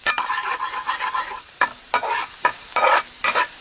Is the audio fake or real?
real